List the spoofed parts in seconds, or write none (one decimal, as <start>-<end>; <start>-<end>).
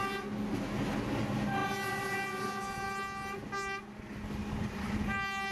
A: none